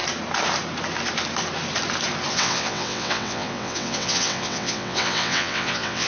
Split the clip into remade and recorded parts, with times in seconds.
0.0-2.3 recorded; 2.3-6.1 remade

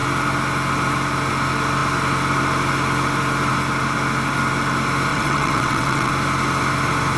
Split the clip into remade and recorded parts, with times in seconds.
0.0-5.1 recorded; 5.1-6.1 remade; 6.1-7.2 recorded

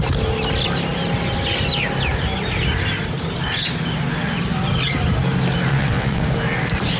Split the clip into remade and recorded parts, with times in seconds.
0.0-5.7 recorded; 5.7-6.2 remade; 6.2-7.0 recorded

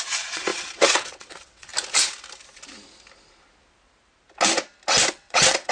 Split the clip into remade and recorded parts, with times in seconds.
0.0-1.7 remade; 1.7-5.1 recorded; 5.1-5.7 remade

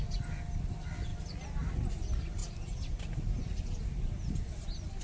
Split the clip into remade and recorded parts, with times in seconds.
0.0-5.0 recorded

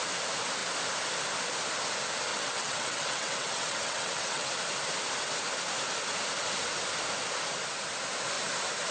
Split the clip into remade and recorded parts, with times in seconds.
0.0-2.3 recorded; 2.3-4.5 remade; 4.5-8.9 recorded

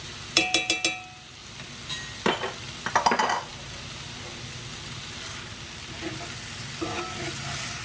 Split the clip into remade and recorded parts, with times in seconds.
0.0-7.8 recorded

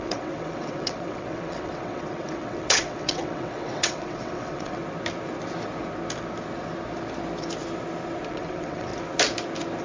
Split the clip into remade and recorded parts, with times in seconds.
0.0-4.8 remade; 4.8-8.3 recorded; 8.3-8.9 remade; 8.9-9.8 recorded